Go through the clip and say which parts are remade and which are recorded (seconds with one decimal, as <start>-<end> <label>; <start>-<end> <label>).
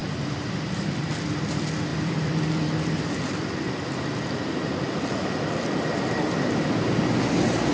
0.0-0.9 remade; 0.9-1.9 recorded; 1.9-6.4 remade; 6.4-7.7 recorded